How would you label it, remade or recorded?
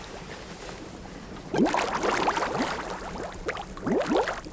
recorded